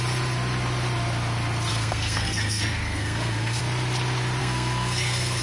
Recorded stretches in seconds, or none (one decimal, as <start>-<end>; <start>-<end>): 0.0-1.7; 3.6-4.4